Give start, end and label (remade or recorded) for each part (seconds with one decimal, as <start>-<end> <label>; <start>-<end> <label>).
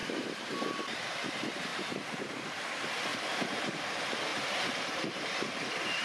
0.0-1.0 remade; 1.0-1.7 recorded; 1.7-2.6 remade; 2.6-3.1 recorded; 3.1-3.8 remade; 3.8-4.3 recorded; 4.3-5.5 remade; 5.5-6.0 recorded